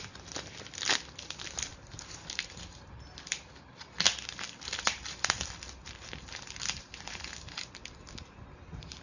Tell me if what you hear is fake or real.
real